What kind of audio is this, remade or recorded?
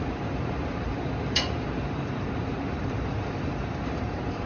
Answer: remade